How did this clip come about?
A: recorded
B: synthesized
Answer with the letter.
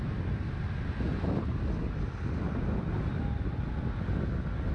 A